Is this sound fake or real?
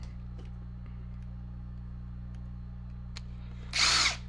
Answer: real